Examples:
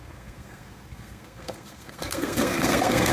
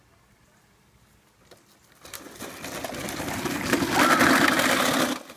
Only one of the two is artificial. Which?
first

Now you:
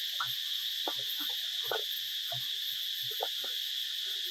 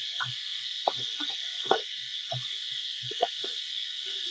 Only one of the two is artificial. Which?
second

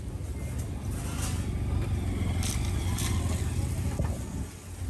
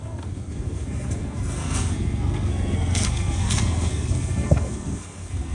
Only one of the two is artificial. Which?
second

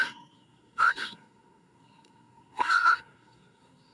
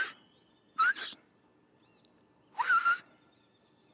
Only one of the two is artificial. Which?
first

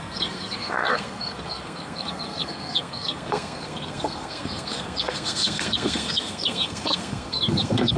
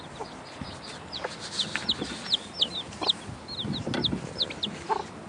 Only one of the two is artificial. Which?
first